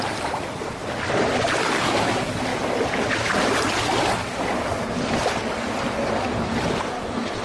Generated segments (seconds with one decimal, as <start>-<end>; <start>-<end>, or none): 0.0-0.8; 1.4-2.5; 6.8-7.4